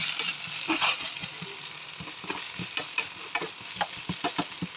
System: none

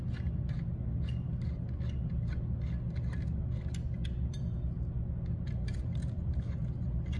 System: none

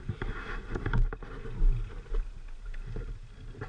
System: none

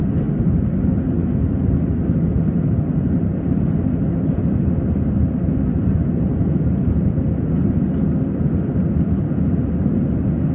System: none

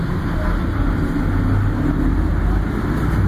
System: none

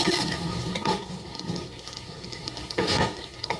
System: codec, SNAC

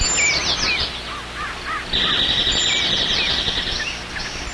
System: none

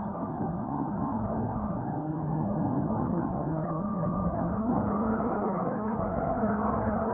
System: codec, SNAC